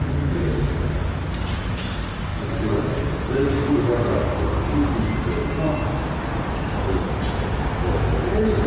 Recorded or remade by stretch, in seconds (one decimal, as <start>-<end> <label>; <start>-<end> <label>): 0.0-2.3 recorded; 2.3-3.1 remade; 3.1-8.7 recorded